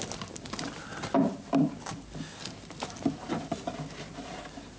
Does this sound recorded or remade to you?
recorded